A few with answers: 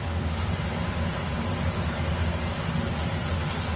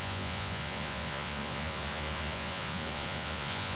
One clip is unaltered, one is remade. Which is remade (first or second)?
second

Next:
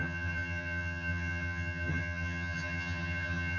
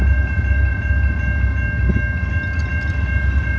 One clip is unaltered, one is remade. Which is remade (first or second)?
first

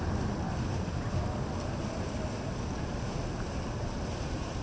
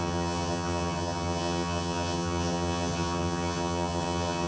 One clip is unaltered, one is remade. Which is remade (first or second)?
second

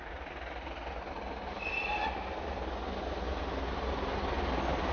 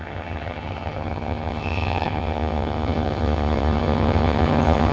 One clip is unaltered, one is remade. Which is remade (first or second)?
second